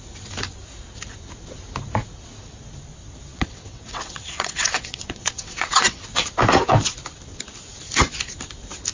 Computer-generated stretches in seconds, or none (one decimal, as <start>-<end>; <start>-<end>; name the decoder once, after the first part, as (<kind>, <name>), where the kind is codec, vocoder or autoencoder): 3.3-6.0 (vocoder, WaveNeXt)